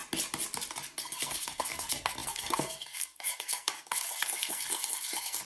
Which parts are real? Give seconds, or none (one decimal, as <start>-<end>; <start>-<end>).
0.0-1.0